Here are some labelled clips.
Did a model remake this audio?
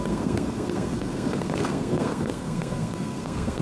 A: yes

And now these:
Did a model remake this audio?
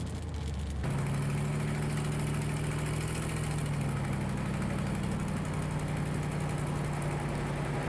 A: no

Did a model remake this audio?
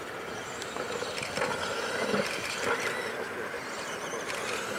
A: no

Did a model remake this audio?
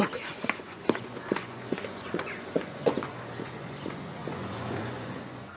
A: yes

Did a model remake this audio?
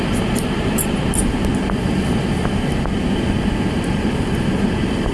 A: no